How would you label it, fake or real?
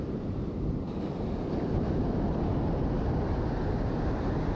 real